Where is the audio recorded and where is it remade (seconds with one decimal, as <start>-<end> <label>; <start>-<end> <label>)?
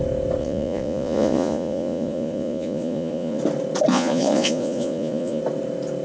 0.0-0.4 recorded; 0.4-3.4 remade; 3.4-3.9 recorded; 3.9-5.4 remade; 5.4-6.0 recorded